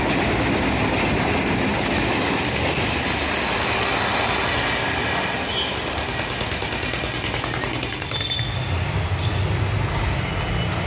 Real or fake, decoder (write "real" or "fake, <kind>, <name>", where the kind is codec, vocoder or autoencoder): real